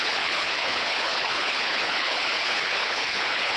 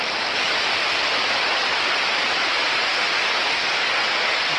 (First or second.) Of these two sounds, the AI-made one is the first